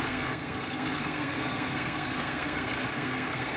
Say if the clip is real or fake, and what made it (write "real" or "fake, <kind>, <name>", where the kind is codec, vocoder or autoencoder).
fake, codec, SNAC